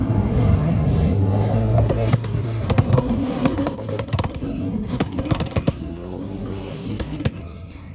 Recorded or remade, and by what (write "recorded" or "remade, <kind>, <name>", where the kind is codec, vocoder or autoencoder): remade, codec, SNAC